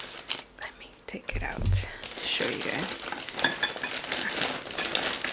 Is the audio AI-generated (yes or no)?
no